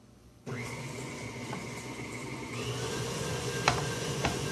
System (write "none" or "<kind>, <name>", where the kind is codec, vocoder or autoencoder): vocoder, Vocos